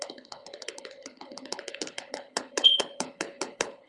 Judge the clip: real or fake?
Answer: fake